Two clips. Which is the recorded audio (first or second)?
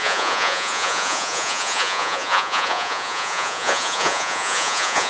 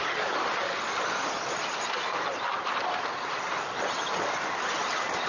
second